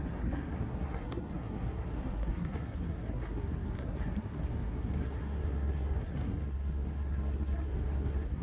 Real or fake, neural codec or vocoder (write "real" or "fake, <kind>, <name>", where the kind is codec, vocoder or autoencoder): fake, codec, SNAC